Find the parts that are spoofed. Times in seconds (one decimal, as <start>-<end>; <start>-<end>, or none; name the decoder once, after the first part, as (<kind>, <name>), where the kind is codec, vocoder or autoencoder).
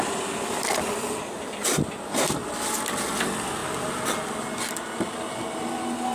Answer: none